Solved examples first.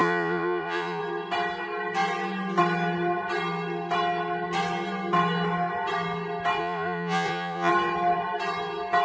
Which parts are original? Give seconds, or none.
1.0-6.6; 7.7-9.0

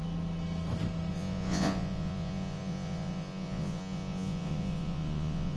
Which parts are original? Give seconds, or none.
0.0-1.1

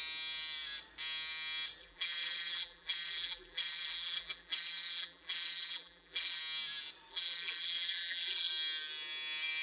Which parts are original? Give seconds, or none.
0.0-1.8; 6.4-7.1; 8.5-9.6

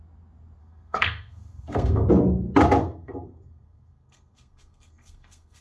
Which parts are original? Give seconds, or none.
0.0-0.6; 2.1-2.8

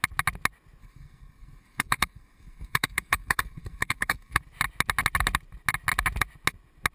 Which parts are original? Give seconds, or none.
0.0-0.8; 4.4-6.9

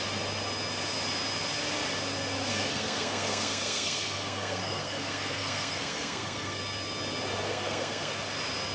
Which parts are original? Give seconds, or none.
0.0-2.5; 6.6-7.5; 8.1-8.7